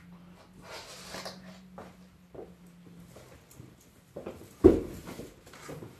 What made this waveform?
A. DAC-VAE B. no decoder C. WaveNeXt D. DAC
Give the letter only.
B